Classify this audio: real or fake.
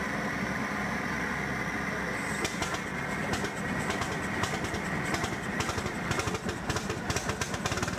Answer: real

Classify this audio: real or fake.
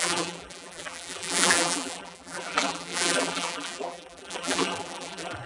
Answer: fake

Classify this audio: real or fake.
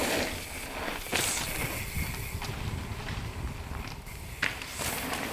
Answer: real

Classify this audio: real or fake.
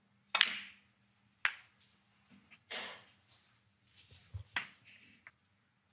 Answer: real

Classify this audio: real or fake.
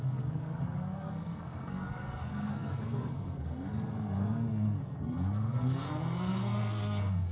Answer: fake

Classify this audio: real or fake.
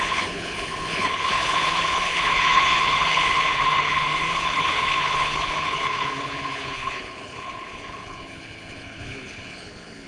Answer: fake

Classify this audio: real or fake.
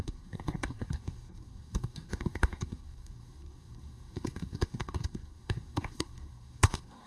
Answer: fake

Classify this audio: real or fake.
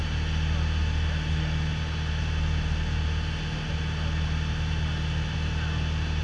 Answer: real